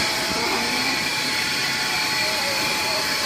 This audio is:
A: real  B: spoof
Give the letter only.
B